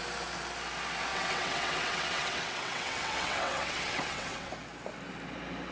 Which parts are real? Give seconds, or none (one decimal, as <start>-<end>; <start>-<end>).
0.0-1.1; 4.5-5.7